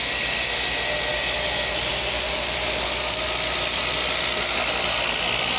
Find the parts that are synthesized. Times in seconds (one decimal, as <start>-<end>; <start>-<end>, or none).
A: none